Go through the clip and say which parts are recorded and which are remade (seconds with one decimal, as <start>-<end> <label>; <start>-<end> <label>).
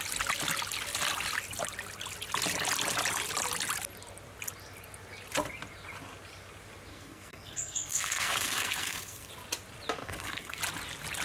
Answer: 0.0-6.9 recorded; 6.9-9.3 remade; 9.3-10.0 recorded; 10.0-10.6 remade; 10.6-11.2 recorded